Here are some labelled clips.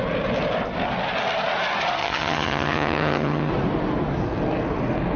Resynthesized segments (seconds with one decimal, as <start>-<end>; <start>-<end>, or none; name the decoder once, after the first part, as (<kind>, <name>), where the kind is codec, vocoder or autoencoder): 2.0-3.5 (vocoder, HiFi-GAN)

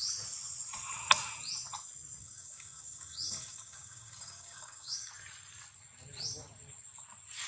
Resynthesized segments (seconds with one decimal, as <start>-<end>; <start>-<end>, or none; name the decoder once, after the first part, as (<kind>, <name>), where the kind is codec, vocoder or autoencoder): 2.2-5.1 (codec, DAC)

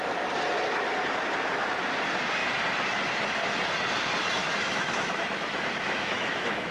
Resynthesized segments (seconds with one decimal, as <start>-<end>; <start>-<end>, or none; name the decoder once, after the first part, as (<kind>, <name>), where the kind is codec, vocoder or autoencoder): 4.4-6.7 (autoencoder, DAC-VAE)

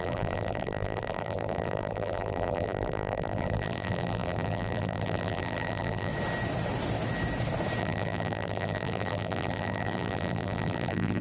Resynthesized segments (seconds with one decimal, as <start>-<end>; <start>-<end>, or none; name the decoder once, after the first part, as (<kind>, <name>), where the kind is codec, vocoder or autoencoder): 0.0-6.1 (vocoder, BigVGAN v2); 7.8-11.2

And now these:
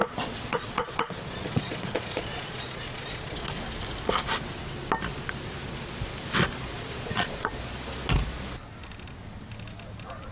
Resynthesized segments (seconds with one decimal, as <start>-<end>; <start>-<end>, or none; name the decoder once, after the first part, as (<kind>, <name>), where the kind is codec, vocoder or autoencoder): 0.0-3.6 (vocoder, Vocos); 6.7-7.5